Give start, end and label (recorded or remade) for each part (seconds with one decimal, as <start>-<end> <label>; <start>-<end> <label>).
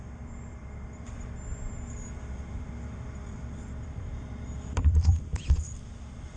0.0-5.3 remade; 5.3-6.4 recorded